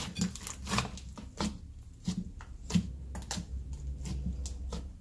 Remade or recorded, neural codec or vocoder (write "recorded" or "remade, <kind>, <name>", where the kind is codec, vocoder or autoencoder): recorded